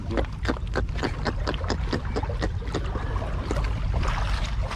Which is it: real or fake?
real